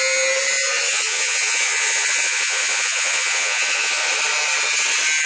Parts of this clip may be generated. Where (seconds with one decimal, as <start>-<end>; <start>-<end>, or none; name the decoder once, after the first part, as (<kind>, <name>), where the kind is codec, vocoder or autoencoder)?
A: 0.9-4.1 (vocoder, Vocos)